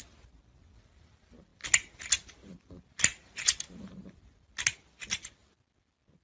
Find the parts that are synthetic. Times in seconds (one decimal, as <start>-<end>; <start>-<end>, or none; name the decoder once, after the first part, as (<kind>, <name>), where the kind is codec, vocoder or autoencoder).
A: none